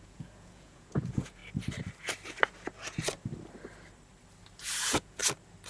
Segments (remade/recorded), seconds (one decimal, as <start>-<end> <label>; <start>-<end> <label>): 0.0-1.4 remade; 1.4-4.8 recorded; 4.8-5.2 remade; 5.2-5.7 recorded